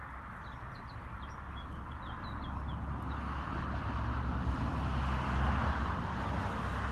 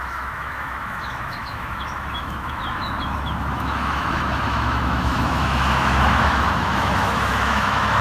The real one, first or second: first